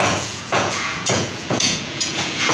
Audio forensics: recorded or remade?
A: remade